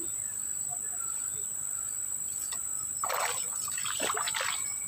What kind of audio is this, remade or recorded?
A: recorded